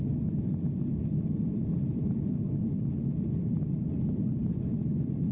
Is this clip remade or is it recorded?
recorded